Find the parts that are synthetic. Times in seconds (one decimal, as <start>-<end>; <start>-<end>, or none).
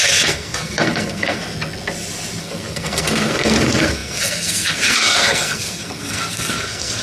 0.0-1.4; 2.4-7.0